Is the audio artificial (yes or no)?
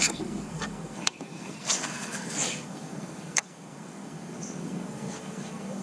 yes